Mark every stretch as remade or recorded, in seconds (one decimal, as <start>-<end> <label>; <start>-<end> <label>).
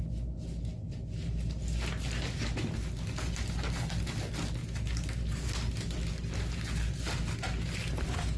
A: 0.0-8.4 recorded